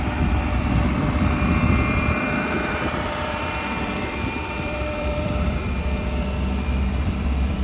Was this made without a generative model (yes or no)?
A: no